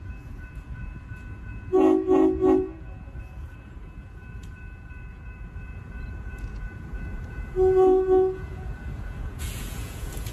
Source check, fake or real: fake